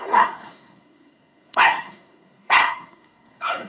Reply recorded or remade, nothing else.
remade